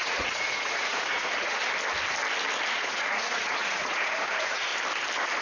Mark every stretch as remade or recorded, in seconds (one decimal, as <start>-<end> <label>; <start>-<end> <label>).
0.0-1.6 remade; 1.6-2.8 recorded; 2.8-4.7 remade; 4.7-5.4 recorded